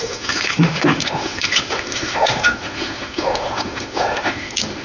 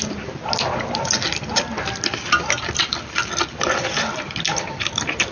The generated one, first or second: first